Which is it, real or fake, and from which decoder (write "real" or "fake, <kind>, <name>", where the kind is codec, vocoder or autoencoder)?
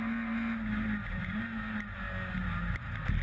real